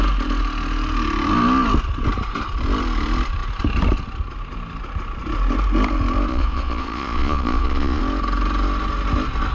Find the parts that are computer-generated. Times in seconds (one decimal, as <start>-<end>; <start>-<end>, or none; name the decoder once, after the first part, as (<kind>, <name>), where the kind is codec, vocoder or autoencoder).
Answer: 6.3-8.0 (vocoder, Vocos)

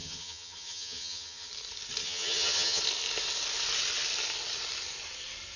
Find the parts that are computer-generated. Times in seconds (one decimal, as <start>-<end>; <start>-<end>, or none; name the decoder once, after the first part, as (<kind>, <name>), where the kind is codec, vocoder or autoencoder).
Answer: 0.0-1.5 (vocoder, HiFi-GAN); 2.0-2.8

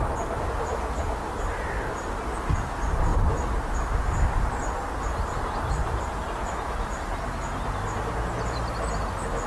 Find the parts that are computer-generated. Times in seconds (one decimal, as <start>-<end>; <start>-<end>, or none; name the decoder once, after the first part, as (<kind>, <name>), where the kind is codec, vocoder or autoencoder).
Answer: none

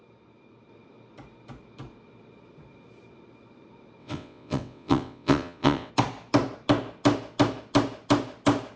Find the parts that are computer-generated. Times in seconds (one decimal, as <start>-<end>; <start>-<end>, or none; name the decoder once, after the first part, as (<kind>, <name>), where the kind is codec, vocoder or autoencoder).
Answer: 4.0-5.9 (vocoder, WaveNeXt)